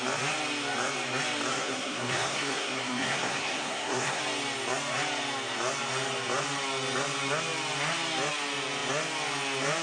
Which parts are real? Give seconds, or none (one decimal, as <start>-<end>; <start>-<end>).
0.0-1.5; 4.2-9.8